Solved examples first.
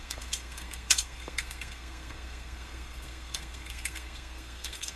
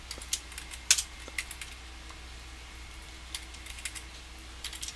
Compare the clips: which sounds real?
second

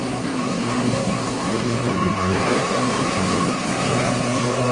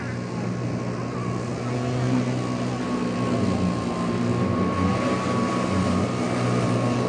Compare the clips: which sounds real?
second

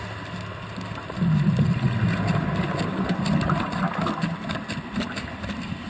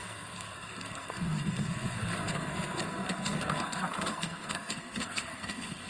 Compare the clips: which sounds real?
first